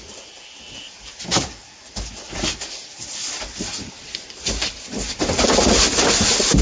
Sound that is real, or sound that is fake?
real